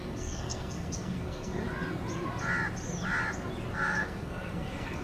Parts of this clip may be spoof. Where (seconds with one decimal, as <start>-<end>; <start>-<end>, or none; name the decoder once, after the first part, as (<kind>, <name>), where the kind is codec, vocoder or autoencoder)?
0.0-1.6 (codec, SNAC); 3.7-5.0